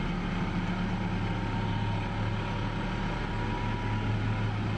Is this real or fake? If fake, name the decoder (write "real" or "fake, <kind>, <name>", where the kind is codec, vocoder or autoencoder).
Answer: real